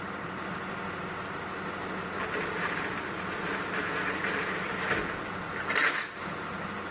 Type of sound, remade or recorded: recorded